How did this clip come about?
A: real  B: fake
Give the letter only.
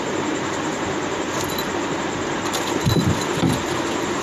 A